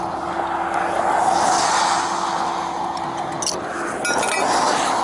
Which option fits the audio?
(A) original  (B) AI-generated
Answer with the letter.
A